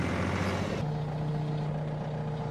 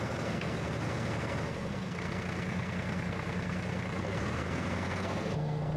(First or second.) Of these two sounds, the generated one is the second